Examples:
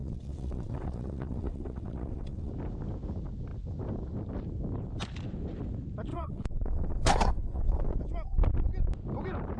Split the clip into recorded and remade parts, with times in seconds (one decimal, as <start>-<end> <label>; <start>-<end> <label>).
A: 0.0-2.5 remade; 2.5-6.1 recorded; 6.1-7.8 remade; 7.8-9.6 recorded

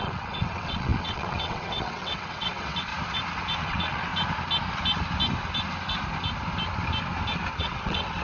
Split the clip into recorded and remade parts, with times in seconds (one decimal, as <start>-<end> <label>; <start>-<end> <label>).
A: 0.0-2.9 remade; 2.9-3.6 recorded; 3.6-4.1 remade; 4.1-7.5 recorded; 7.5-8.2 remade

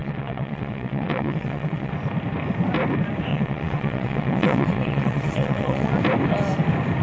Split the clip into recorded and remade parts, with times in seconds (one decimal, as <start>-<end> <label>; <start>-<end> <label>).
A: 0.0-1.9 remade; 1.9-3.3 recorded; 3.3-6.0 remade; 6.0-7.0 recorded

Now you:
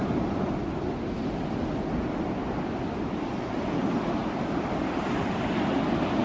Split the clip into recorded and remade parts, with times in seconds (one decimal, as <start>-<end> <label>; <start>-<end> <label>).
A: 0.0-6.2 recorded

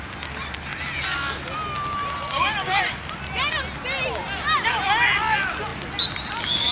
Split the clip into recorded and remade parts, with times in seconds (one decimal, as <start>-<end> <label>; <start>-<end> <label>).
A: 0.0-6.7 recorded